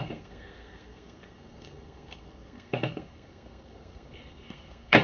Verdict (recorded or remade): remade